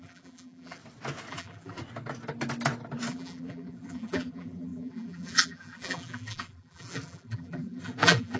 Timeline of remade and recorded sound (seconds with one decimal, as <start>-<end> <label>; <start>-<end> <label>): 0.0-0.8 remade; 0.8-1.3 recorded; 1.3-1.8 remade; 1.8-3.1 recorded; 3.1-8.4 remade